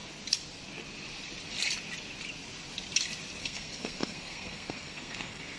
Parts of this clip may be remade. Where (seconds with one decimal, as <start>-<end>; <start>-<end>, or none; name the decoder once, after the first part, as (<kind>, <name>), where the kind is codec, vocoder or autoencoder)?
3.4-5.6 (codec, SNAC)